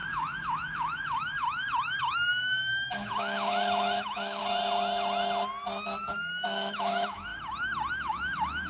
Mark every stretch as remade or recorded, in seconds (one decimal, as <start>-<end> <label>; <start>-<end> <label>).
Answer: 0.0-4.4 remade; 4.4-6.1 recorded; 6.1-7.3 remade; 7.3-7.9 recorded; 7.9-8.7 remade